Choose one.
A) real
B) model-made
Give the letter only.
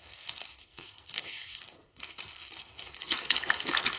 B